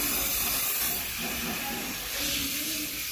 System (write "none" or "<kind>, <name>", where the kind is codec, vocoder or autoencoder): none